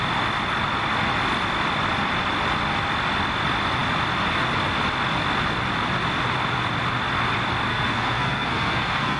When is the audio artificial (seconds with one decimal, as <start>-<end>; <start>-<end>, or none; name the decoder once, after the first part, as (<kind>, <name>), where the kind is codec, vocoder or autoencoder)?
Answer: 7.7-9.2 (codec, SNAC)